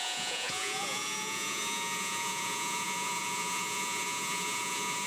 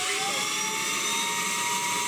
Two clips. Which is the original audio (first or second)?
second